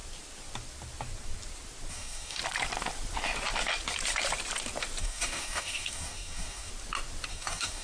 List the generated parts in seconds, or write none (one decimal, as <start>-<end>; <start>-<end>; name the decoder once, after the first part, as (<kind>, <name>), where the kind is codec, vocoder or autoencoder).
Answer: 1.9-2.4 (codec, DAC); 5.0-6.7; 7.3-7.8

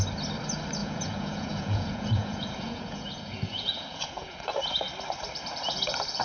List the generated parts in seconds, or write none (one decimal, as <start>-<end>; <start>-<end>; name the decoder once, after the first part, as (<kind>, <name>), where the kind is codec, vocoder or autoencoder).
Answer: 0.8-4.5 (vocoder, Vocos)

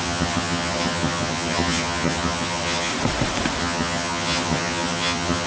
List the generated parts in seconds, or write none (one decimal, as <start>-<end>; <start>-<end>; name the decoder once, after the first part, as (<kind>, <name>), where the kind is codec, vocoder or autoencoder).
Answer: 0.0-2.9 (vocoder, HiFi-GAN); 3.6-5.5

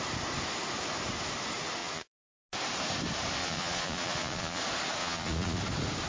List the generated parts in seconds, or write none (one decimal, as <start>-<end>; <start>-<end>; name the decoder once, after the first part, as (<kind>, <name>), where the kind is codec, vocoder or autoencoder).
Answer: 1.8-2.3 (vocoder, Vocos); 3.4-4.6; 5.0-5.6

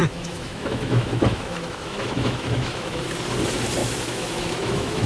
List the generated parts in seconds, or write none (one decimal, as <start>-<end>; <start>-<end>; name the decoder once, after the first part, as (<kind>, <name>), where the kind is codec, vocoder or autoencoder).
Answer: 0.0-3.1 (autoencoder, DAC-VAE); 3.8-5.1